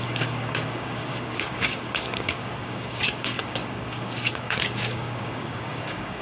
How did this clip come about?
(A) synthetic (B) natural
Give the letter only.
A